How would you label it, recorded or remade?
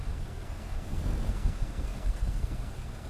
remade